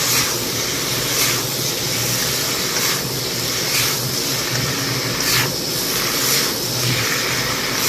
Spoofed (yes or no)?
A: no